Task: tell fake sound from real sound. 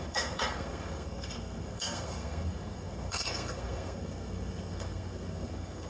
fake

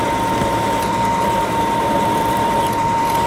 fake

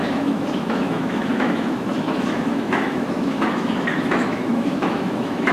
fake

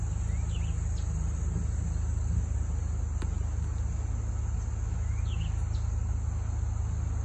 real